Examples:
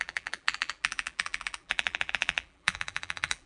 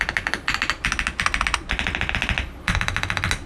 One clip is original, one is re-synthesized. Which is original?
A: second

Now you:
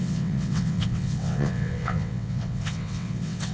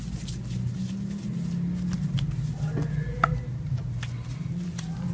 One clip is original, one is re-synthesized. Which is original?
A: second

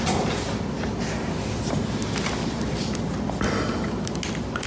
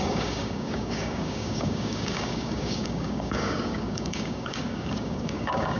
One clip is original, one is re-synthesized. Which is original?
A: first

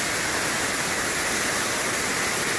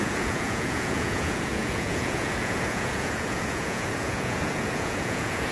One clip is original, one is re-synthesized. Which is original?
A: first